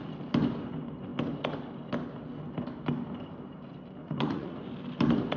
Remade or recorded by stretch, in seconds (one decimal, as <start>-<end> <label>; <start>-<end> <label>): 0.0-4.0 recorded; 4.0-4.6 remade; 4.6-5.4 recorded